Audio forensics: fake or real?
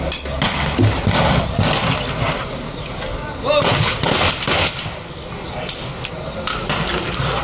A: real